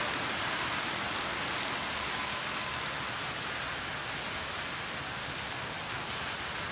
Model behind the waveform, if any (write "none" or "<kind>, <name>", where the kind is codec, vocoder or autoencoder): none